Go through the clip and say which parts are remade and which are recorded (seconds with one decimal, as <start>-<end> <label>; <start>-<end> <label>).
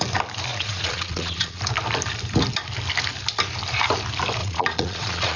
0.0-0.5 recorded; 0.5-1.6 remade; 1.6-4.4 recorded; 4.4-5.4 remade